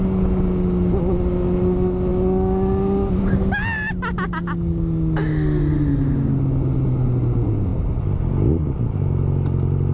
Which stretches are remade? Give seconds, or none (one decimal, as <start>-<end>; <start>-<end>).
none